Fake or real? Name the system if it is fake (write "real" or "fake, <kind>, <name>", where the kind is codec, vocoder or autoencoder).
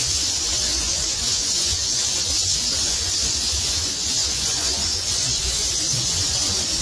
fake, vocoder, Vocos